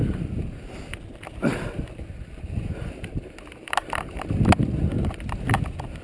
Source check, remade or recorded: remade